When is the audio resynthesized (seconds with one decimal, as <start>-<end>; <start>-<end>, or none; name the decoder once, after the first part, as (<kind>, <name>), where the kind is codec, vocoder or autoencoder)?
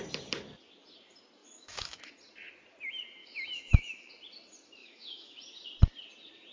1.4-2.1 (autoencoder, DAC-VAE); 3.2-4.1; 4.8-5.4